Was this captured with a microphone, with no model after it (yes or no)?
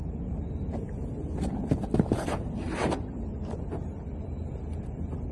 yes